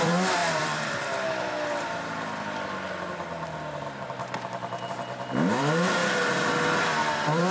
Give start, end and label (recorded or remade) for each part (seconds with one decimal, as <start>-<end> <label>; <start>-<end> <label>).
0.0-6.0 remade; 6.0-6.8 recorded; 6.8-7.5 remade